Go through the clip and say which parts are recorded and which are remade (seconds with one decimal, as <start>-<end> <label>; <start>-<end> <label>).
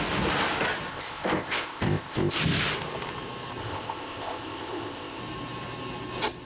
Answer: 0.0-0.9 recorded; 0.9-2.4 remade; 2.4-3.6 recorded; 3.6-5.2 remade; 5.2-6.4 recorded